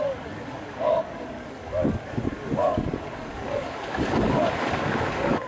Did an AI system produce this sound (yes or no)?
yes